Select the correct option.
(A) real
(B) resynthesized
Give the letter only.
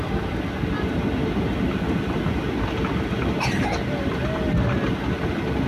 A